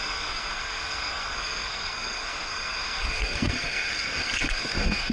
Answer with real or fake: fake